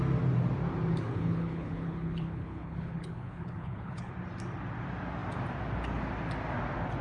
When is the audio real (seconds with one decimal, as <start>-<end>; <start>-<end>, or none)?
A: 0.0-0.9; 4.1-7.0